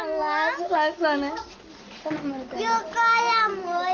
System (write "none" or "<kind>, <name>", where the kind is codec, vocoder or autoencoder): none